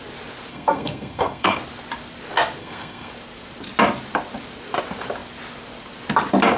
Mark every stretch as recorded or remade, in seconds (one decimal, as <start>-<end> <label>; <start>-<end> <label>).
0.0-0.5 recorded; 0.5-1.6 remade; 1.6-2.6 recorded; 2.6-3.1 remade; 3.1-6.6 recorded